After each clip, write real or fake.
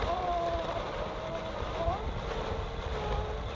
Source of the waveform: real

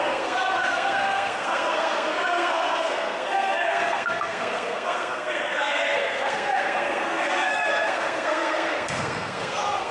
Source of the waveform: fake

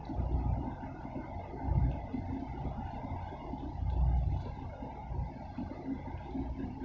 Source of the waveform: real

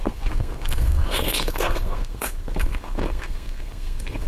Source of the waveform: fake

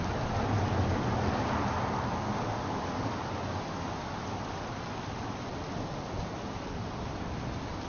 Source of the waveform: real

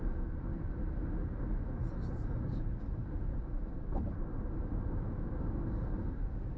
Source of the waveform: fake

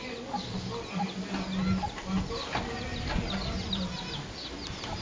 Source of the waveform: real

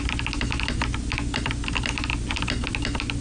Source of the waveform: real